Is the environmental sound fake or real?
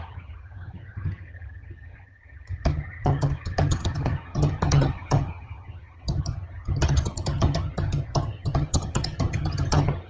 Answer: fake